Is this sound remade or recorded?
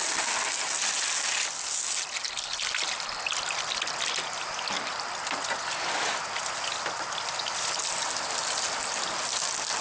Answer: recorded